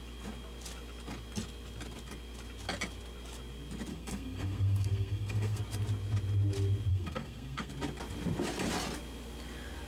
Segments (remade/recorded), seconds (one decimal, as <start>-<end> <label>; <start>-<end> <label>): 0.0-3.9 recorded; 3.9-5.6 remade; 5.6-6.9 recorded; 6.9-7.7 remade; 7.7-9.9 recorded